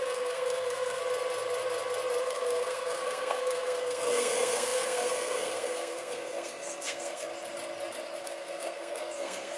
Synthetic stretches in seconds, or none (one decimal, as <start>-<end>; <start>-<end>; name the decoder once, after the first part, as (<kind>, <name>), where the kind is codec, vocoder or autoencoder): 0.0-1.0 (codec, SNAC); 2.2-7.3; 8.2-9.6